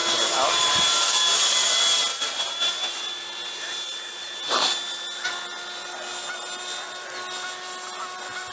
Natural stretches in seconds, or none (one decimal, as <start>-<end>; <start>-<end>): 0.0-2.0; 5.3-8.5